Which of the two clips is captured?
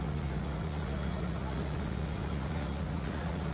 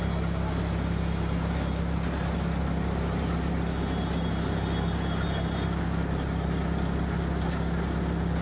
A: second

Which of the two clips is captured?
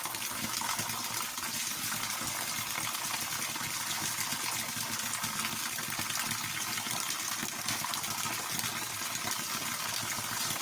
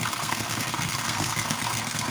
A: first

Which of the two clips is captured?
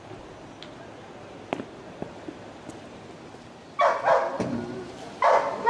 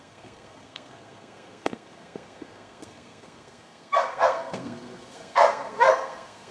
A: first